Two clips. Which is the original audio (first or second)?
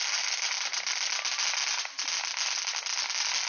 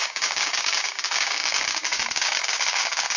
first